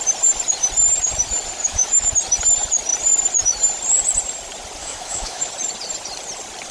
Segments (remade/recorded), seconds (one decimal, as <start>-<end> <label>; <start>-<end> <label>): 0.0-1.6 recorded; 1.6-2.1 remade; 2.1-4.8 recorded; 4.8-5.5 remade; 5.5-6.7 recorded